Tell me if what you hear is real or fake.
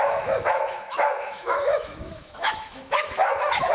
fake